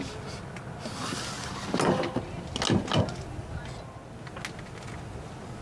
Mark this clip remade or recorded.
recorded